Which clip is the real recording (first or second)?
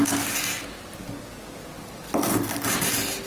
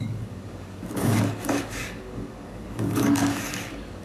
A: first